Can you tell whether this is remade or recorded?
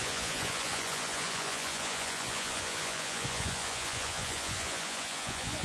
remade